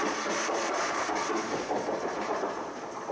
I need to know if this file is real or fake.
fake